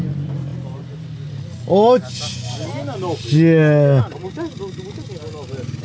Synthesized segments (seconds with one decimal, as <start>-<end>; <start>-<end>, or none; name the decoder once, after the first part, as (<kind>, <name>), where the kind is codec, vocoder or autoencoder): none